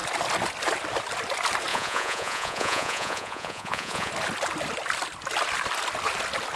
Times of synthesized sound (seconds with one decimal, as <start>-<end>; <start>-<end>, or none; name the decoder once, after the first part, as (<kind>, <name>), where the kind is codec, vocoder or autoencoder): 1.7-4.1 (vocoder, Vocos)

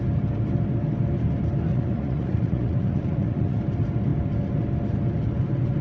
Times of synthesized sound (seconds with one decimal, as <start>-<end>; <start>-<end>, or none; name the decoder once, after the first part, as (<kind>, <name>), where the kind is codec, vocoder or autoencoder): 1.7-3.6 (vocoder, Vocos)